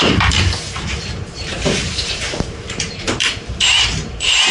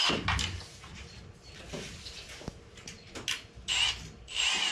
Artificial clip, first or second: first